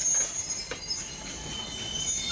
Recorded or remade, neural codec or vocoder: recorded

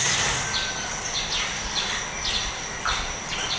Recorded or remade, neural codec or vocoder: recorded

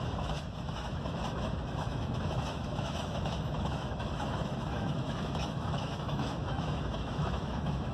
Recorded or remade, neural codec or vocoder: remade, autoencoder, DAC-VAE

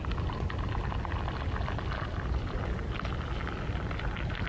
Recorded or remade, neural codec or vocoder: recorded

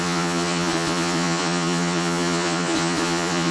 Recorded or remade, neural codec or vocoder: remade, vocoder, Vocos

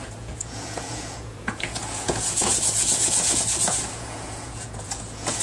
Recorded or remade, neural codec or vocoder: remade, vocoder, Vocos